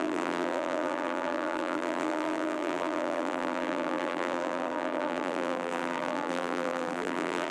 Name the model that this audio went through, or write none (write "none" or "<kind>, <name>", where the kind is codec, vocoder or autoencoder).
vocoder, BigVGAN v2